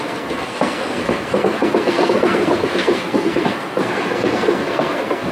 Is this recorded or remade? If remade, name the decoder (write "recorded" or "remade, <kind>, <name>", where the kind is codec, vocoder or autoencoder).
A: remade, codec, SNAC